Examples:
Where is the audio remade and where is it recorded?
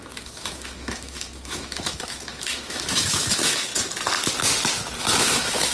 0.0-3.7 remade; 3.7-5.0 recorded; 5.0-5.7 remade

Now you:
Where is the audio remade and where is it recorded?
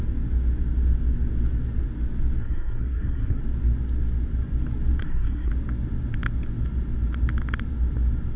0.0-2.4 recorded; 2.4-3.4 remade; 3.4-5.0 recorded; 5.0-5.5 remade; 5.5-8.4 recorded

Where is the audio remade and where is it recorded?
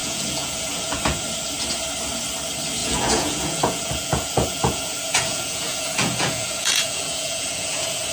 0.0-1.2 remade; 1.2-2.8 recorded; 2.8-8.1 remade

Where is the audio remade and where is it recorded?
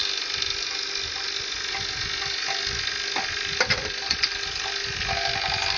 0.0-5.8 recorded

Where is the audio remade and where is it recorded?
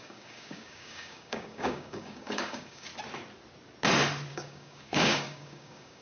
0.0-2.9 remade; 2.9-4.3 recorded; 4.3-6.0 remade